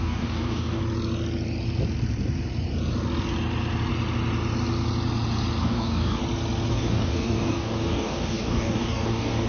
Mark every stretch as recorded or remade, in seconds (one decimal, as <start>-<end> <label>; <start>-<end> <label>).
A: 0.0-0.8 remade; 0.8-5.6 recorded; 5.6-6.2 remade; 6.2-6.7 recorded; 6.7-9.5 remade